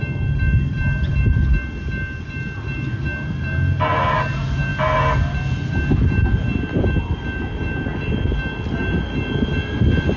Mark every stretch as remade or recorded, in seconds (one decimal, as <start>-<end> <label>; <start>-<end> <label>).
0.0-10.2 recorded